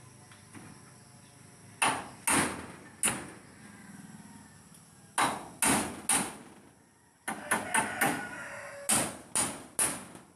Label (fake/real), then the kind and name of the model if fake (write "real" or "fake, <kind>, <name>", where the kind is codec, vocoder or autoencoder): real